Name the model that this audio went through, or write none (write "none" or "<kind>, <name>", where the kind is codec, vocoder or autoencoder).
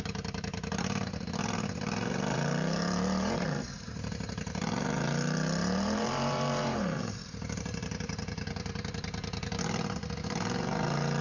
vocoder, BigVGAN v2